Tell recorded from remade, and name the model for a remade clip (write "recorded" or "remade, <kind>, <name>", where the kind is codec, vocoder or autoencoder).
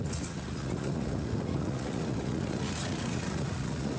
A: remade, vocoder, Vocos